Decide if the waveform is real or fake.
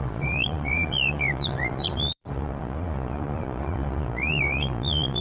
fake